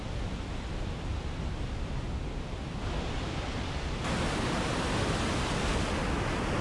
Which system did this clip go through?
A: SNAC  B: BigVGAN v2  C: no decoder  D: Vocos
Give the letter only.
C